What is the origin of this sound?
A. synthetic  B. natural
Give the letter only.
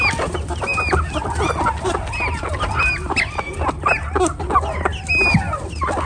B